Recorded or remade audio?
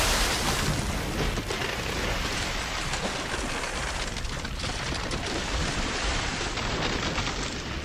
recorded